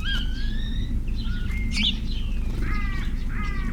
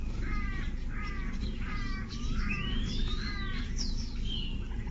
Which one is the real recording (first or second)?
first